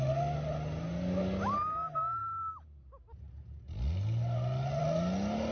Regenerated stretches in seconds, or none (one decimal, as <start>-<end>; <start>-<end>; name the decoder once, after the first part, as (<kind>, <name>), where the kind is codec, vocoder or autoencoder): none